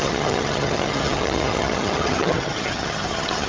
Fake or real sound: fake